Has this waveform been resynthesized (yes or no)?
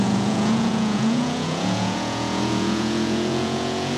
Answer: yes